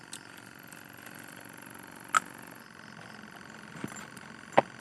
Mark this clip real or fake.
real